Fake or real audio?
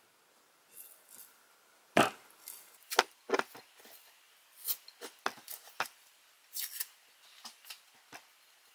real